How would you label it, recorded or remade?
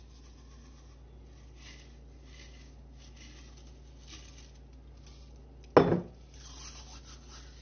recorded